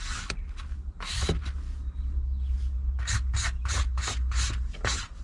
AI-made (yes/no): no